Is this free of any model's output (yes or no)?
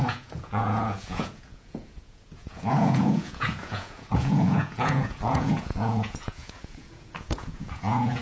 no